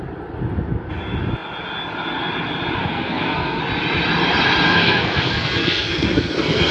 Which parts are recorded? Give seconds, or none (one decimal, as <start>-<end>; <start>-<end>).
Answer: 0.0-2.8; 3.6-4.7